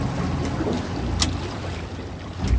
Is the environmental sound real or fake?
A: real